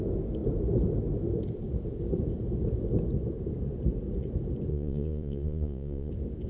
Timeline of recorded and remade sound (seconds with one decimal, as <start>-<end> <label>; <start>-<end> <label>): 0.0-4.7 recorded; 4.7-6.1 remade; 6.1-6.5 recorded